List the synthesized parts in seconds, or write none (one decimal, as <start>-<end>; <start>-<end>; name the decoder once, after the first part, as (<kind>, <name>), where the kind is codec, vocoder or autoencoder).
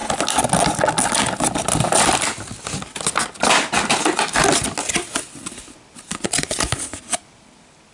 none